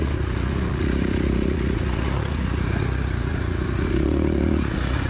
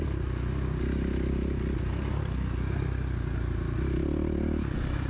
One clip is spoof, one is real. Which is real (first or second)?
second